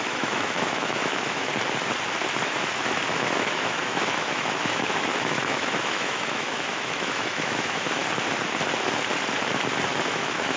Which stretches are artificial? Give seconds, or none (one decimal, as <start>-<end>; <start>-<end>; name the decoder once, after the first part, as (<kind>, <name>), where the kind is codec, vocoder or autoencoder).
0.0-1.5 (autoencoder, DAC-VAE); 2.4-8.0; 9.9-10.6